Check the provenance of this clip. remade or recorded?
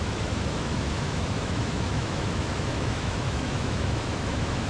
remade